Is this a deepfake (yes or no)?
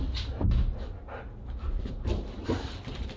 no